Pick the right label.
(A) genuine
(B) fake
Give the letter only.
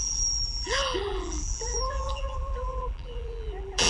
B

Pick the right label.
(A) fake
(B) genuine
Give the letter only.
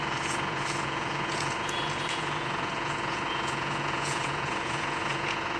A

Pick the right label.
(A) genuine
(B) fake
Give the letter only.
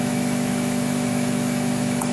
B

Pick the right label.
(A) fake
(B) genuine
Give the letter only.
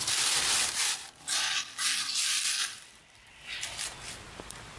B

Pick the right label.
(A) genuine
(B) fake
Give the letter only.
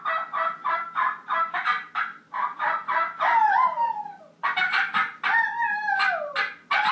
A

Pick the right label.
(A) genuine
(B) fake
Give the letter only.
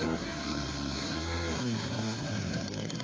B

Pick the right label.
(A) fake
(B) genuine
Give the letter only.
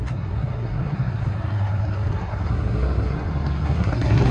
A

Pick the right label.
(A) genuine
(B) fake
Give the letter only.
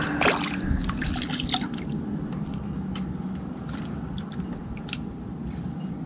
A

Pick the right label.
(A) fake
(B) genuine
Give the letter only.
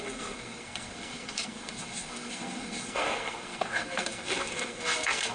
A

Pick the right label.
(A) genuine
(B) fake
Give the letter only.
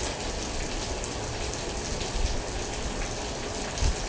A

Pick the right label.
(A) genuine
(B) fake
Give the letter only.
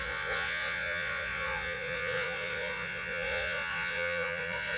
B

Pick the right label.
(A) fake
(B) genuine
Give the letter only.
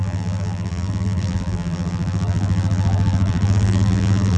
A